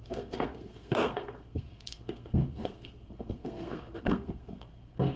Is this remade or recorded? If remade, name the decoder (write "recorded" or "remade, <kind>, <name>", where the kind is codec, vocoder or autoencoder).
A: remade, codec, SNAC